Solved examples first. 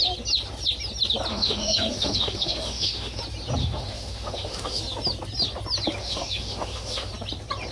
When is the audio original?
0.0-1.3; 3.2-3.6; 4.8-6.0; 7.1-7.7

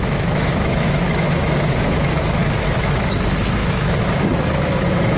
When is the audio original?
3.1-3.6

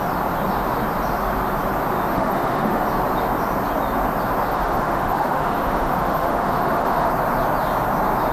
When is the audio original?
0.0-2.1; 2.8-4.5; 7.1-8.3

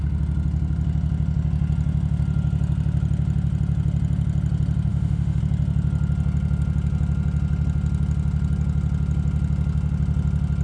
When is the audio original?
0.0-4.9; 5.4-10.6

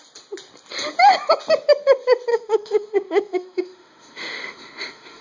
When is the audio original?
0.0-2.3

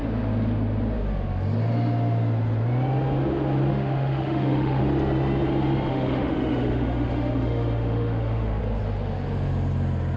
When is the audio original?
0.0-3.7; 4.8-5.9; 8.6-10.2